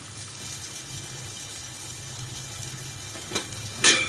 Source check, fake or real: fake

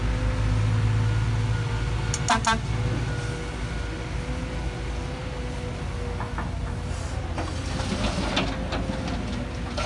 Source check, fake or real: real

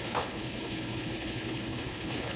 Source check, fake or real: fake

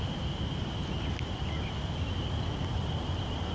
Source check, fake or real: real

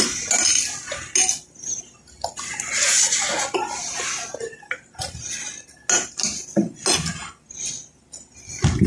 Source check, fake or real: real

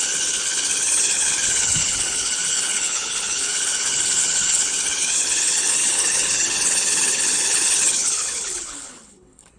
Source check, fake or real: fake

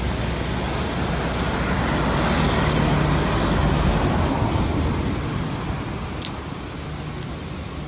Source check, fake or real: real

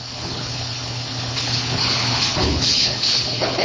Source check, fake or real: fake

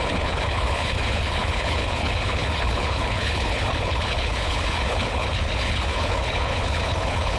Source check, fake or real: fake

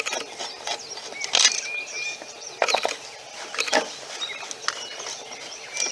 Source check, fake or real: real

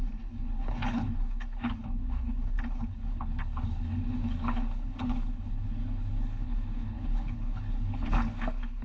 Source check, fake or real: fake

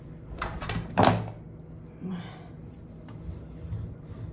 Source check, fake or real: real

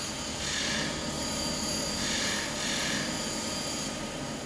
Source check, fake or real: real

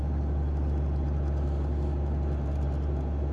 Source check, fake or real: real